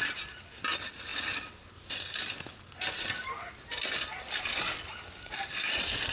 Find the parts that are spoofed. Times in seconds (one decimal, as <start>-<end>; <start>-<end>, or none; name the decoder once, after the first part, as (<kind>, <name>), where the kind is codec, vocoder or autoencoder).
none